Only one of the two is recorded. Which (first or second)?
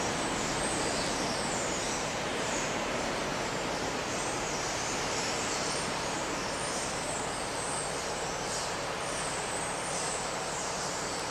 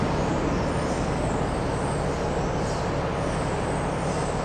second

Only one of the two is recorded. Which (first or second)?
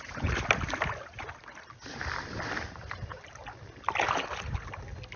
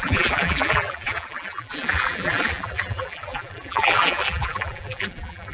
first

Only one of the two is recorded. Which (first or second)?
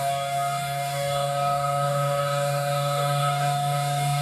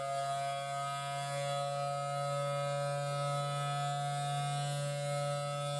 second